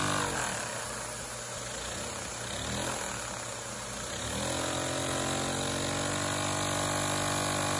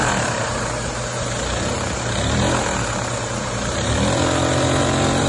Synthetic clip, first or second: second